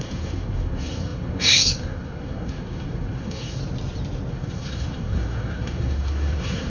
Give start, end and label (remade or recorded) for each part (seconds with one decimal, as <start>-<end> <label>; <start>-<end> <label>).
0.0-3.6 remade; 3.6-4.3 recorded; 4.3-6.7 remade